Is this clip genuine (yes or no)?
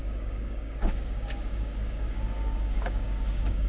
no